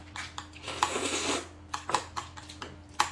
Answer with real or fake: real